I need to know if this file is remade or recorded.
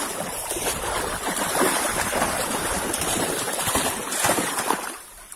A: remade